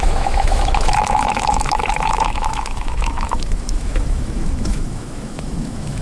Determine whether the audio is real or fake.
fake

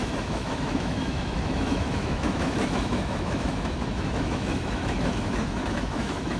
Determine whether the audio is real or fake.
fake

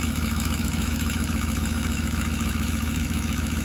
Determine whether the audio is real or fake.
fake